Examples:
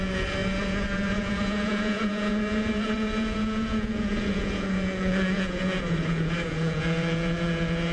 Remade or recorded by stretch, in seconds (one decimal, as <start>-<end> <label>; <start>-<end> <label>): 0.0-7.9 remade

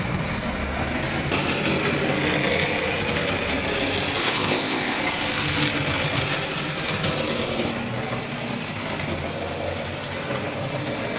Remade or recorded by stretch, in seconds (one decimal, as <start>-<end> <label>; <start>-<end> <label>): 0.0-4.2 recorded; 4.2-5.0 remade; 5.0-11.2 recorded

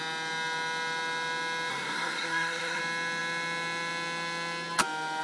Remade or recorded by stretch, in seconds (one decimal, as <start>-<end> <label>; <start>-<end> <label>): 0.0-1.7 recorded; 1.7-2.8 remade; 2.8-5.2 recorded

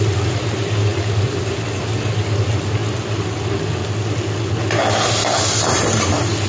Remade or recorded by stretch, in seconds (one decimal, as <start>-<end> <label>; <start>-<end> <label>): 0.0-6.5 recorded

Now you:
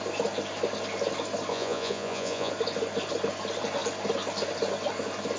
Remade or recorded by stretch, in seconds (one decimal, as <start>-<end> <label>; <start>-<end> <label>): 0.0-1.5 recorded; 1.5-2.5 remade; 2.5-5.4 recorded

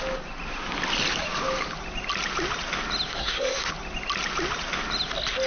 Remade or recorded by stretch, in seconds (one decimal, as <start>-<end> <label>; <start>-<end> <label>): 0.0-3.1 recorded; 3.1-3.7 remade; 3.7-5.5 recorded

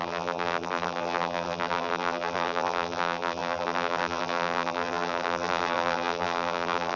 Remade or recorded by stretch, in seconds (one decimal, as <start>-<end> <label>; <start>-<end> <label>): 0.0-7.0 remade